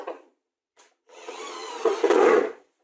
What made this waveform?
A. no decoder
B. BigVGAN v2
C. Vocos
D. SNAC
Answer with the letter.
C